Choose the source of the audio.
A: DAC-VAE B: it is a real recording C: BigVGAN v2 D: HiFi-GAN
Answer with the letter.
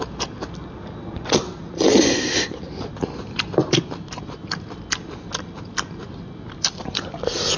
B